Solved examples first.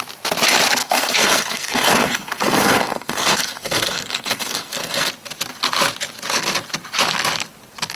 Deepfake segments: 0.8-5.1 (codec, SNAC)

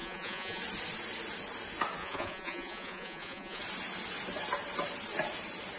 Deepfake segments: 0.0-0.6 (vocoder, Vocos); 2.0-3.6

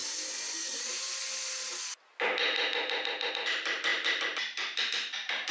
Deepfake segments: none

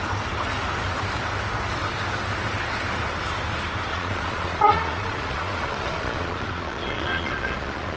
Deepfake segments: 3.9-8.0 (vocoder, Vocos)

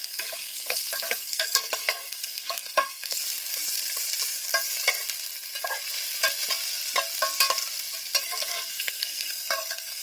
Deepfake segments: 0.0-3.2 (codec, SNAC); 8.2-10.0